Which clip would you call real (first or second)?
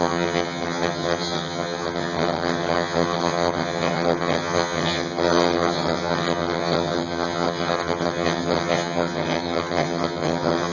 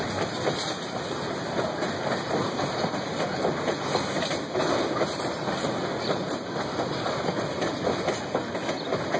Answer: second